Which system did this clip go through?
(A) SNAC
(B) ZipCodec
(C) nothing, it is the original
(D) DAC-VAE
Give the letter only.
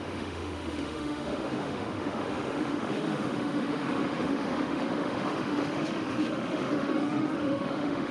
D